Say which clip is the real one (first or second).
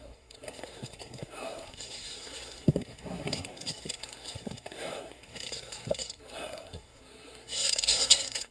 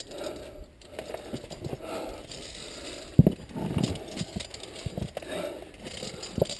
second